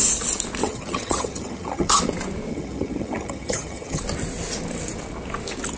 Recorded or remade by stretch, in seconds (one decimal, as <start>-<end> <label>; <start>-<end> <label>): 0.0-0.6 recorded; 0.6-2.0 remade; 2.0-2.5 recorded; 2.5-4.0 remade; 4.0-5.8 recorded